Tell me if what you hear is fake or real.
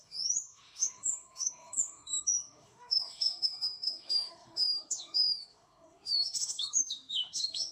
fake